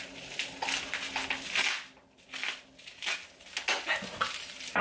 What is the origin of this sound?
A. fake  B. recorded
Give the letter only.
B